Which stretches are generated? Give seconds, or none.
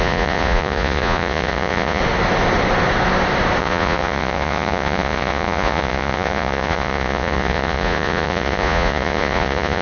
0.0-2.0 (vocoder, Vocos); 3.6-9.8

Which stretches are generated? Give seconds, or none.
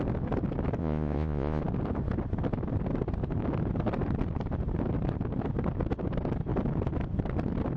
0.8-1.6 (vocoder, Vocos)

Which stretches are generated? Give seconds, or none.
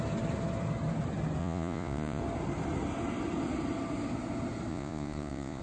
1.4-2.2 (vocoder, Vocos); 4.7-5.6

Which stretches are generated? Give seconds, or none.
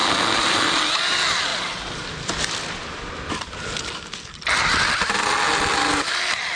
none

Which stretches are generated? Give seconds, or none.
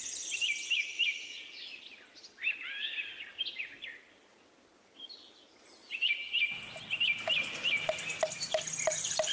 none